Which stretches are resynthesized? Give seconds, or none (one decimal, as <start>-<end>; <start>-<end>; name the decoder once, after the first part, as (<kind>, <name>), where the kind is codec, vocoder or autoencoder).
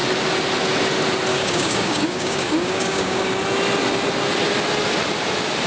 1.3-3.3 (codec, DAC)